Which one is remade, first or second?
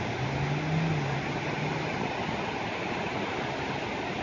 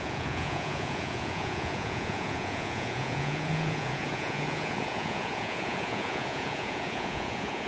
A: second